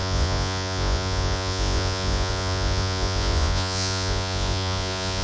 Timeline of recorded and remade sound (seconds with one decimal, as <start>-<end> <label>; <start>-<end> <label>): 0.0-5.2 remade